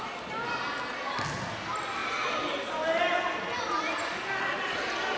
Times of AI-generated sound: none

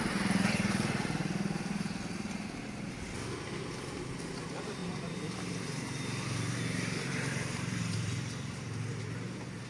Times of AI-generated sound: 4.8-9.7 (vocoder, BigVGAN v2)

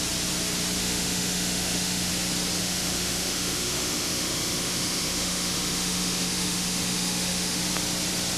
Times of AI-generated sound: 0.8-2.1 (autoencoder, DAC-VAE); 2.6-7.6